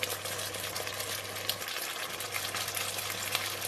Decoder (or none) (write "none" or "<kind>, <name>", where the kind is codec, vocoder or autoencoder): none